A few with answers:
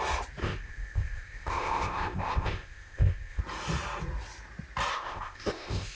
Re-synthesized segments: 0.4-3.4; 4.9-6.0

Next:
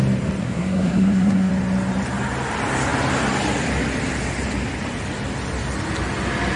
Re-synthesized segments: 0.4-1.5